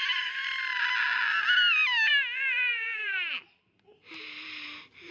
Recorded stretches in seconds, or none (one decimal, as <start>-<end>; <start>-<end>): 0.0-2.7; 3.4-5.1